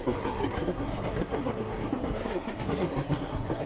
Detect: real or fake fake